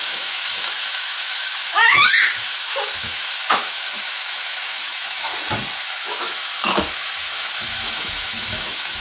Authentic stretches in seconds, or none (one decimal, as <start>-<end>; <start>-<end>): 5.3-5.8